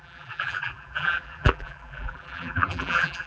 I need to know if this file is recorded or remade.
remade